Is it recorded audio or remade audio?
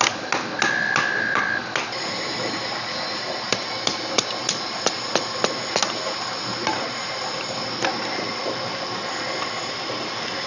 recorded